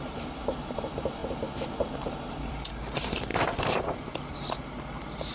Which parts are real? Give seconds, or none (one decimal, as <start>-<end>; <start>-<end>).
1.2-1.9